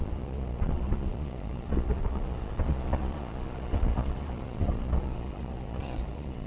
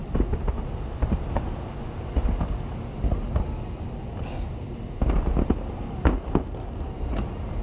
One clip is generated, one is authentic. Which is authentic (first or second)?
second